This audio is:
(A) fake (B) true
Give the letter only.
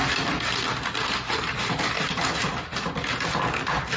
B